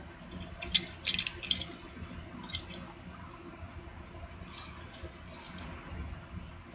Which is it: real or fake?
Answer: real